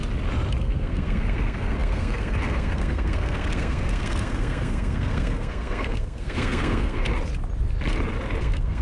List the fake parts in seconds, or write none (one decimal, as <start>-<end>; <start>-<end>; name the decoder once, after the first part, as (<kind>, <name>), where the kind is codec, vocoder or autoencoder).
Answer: 0.6-7.1 (codec, SNAC); 8.4-8.8